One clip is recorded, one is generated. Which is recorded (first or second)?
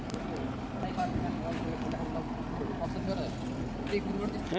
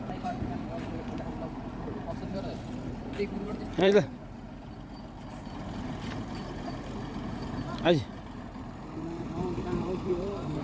first